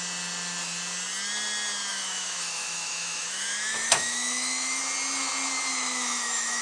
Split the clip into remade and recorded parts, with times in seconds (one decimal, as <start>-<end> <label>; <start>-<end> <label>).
0.0-1.9 recorded; 1.9-4.8 remade; 4.8-5.7 recorded; 5.7-6.6 remade